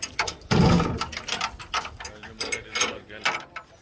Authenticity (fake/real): real